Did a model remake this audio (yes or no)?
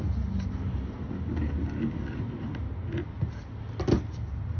no